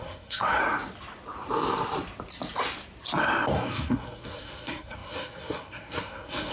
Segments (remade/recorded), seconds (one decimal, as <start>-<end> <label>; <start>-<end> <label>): 0.0-0.6 remade; 0.6-3.5 recorded; 3.5-6.5 remade